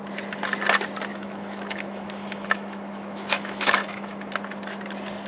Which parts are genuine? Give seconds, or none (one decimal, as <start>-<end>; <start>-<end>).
0.0-1.1; 4.3-5.3